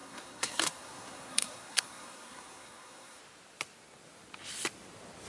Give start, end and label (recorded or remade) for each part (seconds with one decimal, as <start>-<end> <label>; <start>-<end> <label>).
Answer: 0.0-3.2 remade; 3.2-5.3 recorded